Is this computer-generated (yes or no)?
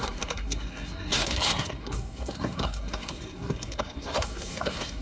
yes